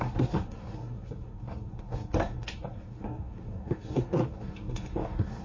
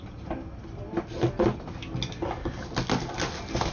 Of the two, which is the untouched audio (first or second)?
second